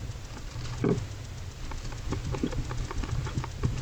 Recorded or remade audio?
recorded